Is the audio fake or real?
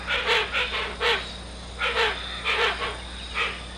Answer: real